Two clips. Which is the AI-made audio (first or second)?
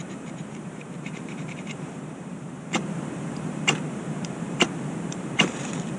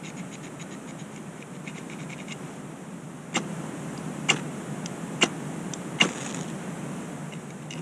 first